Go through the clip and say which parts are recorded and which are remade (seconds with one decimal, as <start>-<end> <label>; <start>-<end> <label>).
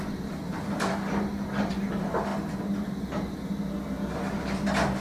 0.0-0.5 recorded; 0.5-1.0 remade; 1.0-5.0 recorded